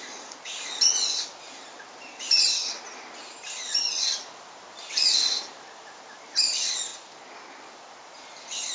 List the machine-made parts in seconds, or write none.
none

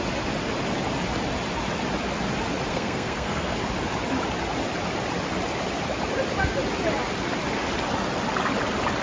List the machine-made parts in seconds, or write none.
2.7-3.6 (codec, SNAC)